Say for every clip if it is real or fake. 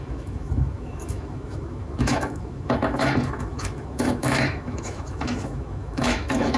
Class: fake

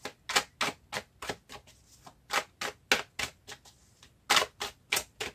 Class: real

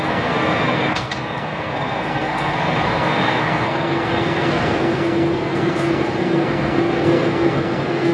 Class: fake